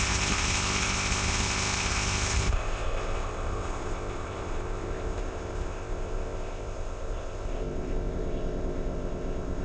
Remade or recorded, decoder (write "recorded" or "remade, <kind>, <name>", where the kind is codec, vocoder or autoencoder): remade, codec, ZipCodec